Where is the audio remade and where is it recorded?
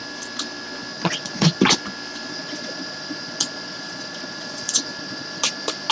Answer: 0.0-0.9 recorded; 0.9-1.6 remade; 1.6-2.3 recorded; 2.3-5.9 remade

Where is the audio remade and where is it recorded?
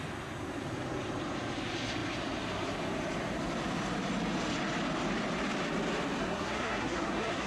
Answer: 0.0-6.2 recorded; 6.2-7.5 remade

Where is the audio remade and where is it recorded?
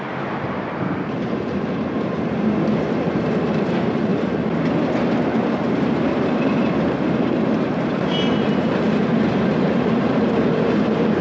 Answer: 0.0-4.1 remade; 4.1-6.1 recorded; 6.1-11.2 remade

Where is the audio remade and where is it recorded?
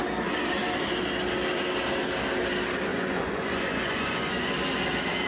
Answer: 0.0-2.9 recorded; 2.9-4.5 remade; 4.5-5.3 recorded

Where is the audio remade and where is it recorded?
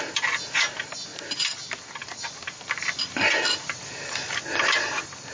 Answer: 0.0-5.3 recorded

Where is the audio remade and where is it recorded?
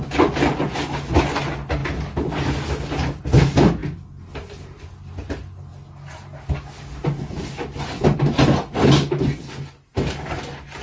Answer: 0.0-10.8 recorded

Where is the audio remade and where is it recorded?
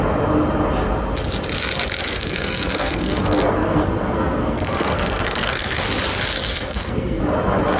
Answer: 0.0-2.0 recorded; 2.0-5.8 remade; 5.8-6.5 recorded; 6.5-7.2 remade; 7.2-7.8 recorded